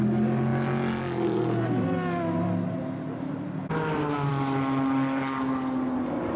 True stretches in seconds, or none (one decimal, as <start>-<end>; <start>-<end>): 0.0-6.4